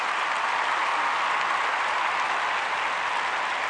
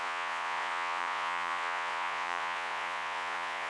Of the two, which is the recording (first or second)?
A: first